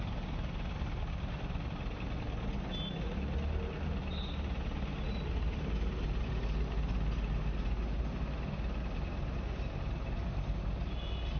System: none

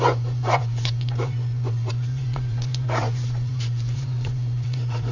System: vocoder, Vocos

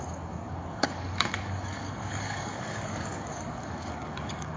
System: codec, DAC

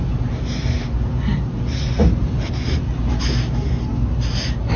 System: none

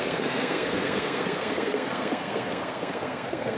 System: codec, SNAC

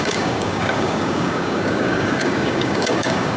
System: codec, DAC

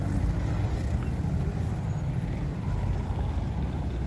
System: none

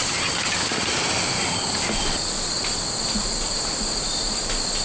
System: none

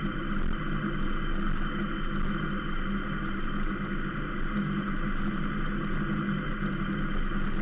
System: none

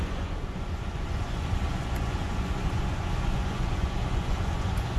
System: vocoder, Vocos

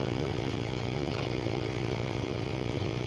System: vocoder, WaveNeXt